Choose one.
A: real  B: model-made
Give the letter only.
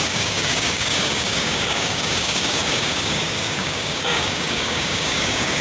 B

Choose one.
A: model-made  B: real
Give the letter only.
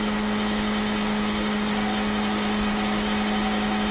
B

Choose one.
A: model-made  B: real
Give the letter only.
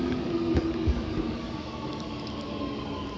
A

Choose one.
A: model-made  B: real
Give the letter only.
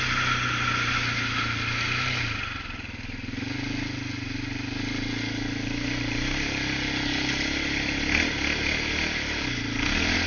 B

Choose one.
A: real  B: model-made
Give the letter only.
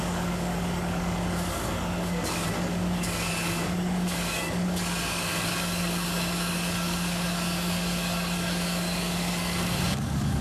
B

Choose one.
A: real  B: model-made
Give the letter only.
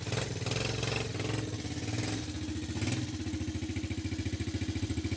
A